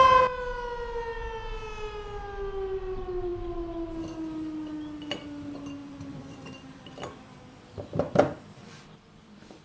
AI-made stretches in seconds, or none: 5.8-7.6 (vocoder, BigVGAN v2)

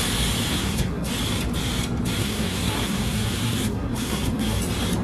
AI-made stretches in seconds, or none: 0.5-1.1 (codec, SNAC); 2.2-4.6

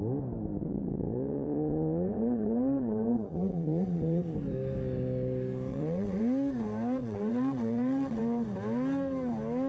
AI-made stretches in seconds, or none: 0.6-4.2 (vocoder, WaveNeXt); 5.7-6.2; 7.0-8.2

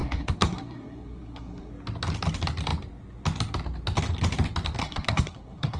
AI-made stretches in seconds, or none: 0.0-1.7 (codec, SNAC); 4.8-5.8

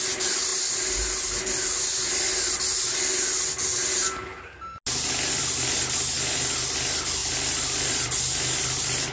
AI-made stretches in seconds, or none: 7.2-8.2 (vocoder, BigVGAN v2)

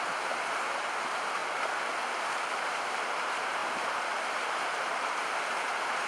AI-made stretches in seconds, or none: 0.0-1.4 (vocoder, BigVGAN v2); 2.6-6.1

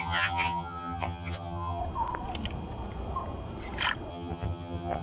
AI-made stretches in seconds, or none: 0.0-1.8 (vocoder, HiFi-GAN); 4.1-5.0